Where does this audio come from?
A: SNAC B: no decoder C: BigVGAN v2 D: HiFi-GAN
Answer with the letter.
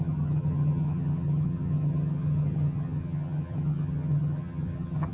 D